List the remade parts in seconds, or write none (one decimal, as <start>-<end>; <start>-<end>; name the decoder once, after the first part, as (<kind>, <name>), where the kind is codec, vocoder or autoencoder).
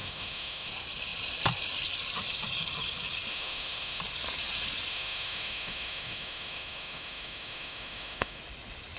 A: 0.0-0.7 (autoencoder, DAC-VAE); 3.3-4.0; 4.9-8.4